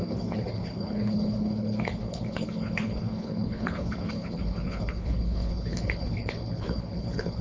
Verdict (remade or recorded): remade